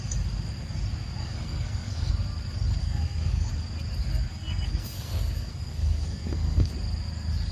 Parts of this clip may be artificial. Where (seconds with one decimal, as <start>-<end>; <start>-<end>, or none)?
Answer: 1.2-2.1; 2.8-3.5; 4.3-6.7